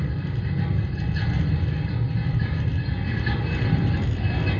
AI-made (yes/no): no